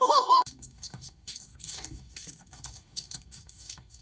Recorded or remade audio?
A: remade